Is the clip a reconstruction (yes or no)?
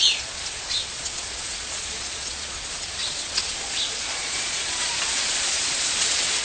yes